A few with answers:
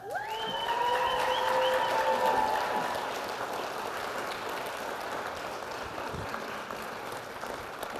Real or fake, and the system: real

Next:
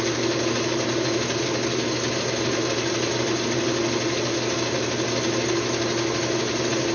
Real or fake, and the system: real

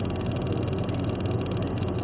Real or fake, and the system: real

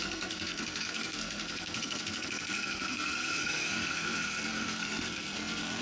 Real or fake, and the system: fake, codec, SNAC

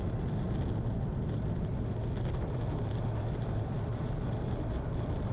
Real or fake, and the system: real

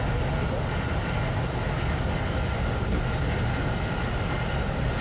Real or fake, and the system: real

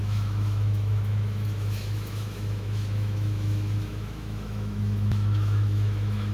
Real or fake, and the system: fake, autoencoder, DAC-VAE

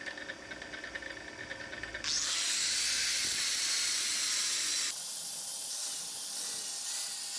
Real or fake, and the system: real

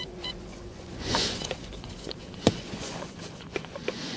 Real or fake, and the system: fake, vocoder, Vocos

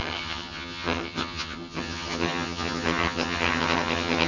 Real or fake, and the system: fake, vocoder, HiFi-GAN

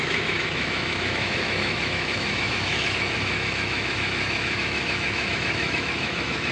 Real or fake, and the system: fake, autoencoder, DAC-VAE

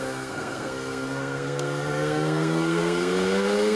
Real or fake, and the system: fake, codec, SNAC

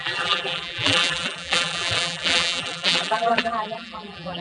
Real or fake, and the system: fake, vocoder, BigVGAN v2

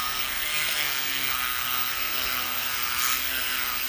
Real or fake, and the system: fake, codec, SNAC